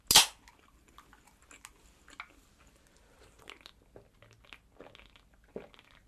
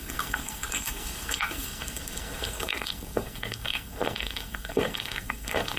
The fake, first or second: second